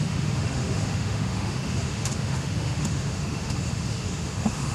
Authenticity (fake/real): fake